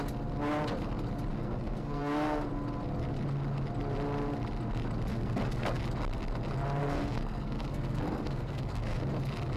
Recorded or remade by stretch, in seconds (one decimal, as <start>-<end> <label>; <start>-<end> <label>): 0.0-1.3 recorded; 1.3-2.5 remade; 2.5-5.1 recorded; 5.1-5.8 remade; 5.8-6.8 recorded; 6.8-9.0 remade; 9.0-9.6 recorded